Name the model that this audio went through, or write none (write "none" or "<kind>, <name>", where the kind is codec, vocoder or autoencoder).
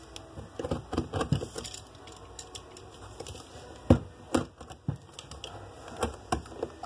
none